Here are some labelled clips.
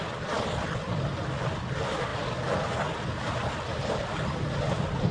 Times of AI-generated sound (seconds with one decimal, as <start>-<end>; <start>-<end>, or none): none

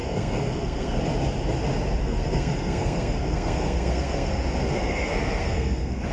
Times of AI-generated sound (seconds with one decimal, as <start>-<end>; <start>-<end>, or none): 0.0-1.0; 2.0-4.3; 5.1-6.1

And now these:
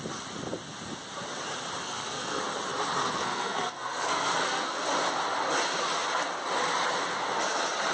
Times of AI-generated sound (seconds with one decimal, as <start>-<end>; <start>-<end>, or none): 1.8-2.4; 3.0-4.8

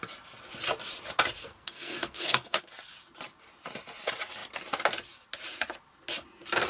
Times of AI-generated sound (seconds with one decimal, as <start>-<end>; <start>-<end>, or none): 1.4-2.6

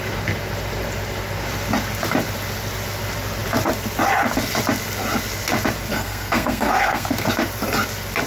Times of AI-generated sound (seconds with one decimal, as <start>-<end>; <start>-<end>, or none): 5.9-7.3

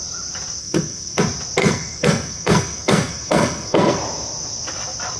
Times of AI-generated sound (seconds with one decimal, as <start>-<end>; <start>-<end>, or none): 0.6-1.2; 1.6-4.0

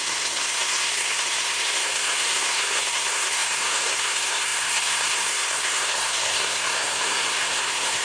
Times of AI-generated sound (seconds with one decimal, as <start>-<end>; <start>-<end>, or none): 0.0-8.0